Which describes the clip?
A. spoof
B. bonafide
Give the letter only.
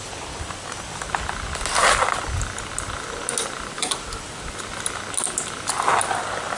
B